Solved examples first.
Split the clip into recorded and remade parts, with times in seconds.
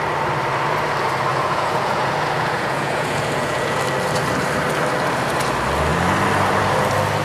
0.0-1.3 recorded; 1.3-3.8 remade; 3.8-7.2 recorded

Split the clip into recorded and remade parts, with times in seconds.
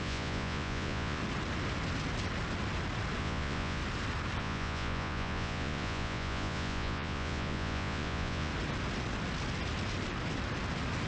0.0-1.2 remade; 1.2-3.2 recorded; 3.2-3.8 remade; 3.8-4.4 recorded; 4.4-8.5 remade; 8.5-11.1 recorded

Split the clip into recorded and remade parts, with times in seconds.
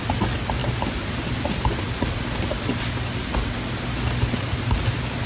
0.0-5.3 recorded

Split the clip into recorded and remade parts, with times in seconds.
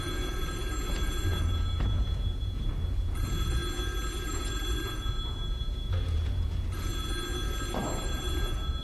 0.0-3.6 remade; 3.6-4.3 recorded; 4.3-6.9 remade; 6.9-8.0 recorded; 8.0-8.8 remade